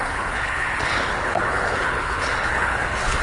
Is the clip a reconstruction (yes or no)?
yes